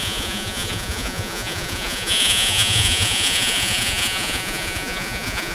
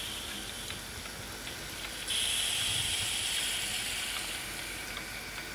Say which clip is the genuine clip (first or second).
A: second